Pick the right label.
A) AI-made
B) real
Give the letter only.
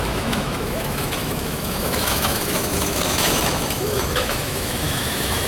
A